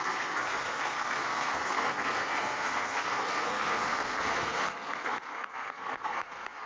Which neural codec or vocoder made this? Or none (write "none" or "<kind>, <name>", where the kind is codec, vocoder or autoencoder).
codec, SNAC